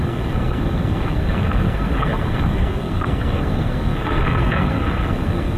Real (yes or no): no